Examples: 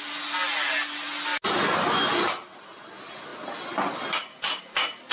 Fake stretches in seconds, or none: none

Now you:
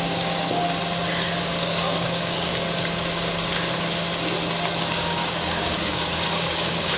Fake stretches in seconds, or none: 0.0-0.6 (codec, DAC); 1.4-2.5; 4.8-7.0

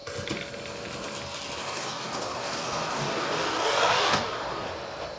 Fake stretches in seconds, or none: 1.6-4.7 (codec, DAC)